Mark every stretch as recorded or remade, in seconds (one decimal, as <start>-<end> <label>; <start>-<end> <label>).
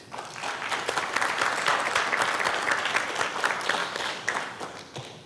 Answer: 0.0-3.8 recorded; 3.8-4.6 remade; 4.6-5.3 recorded